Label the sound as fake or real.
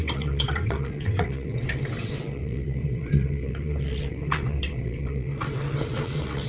fake